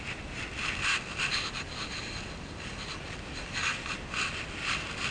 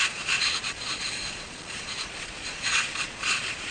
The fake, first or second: second